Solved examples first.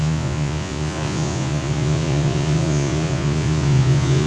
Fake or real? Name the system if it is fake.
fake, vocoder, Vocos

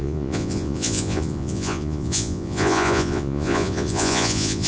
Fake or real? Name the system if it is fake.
fake, vocoder, Vocos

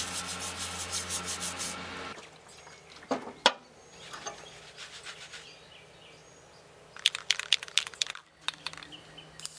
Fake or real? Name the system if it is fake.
real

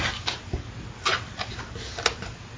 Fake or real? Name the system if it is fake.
real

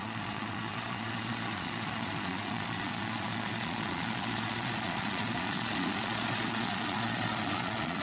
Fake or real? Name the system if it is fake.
fake, vocoder, Vocos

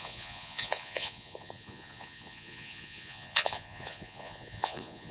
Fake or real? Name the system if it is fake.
fake, vocoder, Vocos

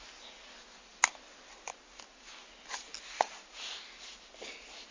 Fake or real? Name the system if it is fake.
real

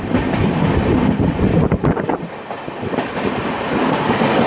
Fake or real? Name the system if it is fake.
real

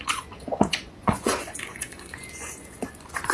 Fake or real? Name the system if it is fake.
fake, vocoder, Vocos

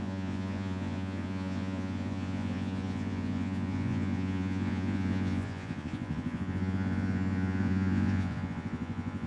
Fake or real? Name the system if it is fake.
fake, vocoder, Vocos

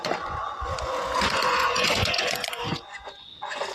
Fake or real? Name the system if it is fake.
fake, vocoder, Vocos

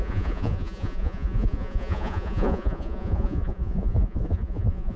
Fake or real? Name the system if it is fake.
fake, vocoder, Vocos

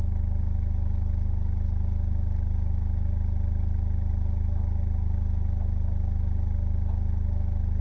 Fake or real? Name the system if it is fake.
real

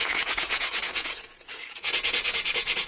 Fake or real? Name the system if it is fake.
fake, vocoder, Vocos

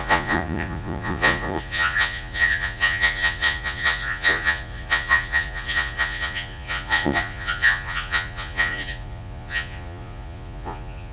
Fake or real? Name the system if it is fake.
fake, vocoder, Vocos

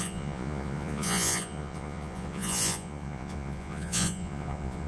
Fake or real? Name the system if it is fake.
fake, vocoder, Vocos